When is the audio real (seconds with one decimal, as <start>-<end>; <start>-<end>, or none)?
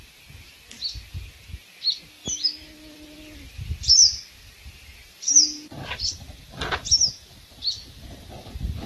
0.0-2.2; 6.7-8.9